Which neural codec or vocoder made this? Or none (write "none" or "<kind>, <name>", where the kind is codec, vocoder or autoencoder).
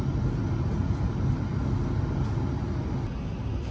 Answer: none